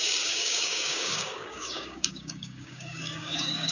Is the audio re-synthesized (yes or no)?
yes